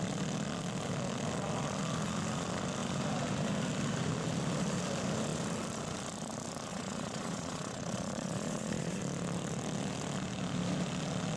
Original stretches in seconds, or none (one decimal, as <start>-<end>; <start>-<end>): 0.0-6.7; 9.0-11.4